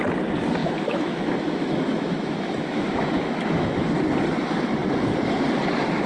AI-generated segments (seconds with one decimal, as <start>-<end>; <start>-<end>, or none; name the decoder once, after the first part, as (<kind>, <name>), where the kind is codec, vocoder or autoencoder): 0.6-3.8 (autoencoder, DAC-VAE)